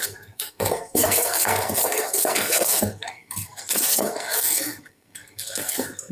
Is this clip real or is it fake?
fake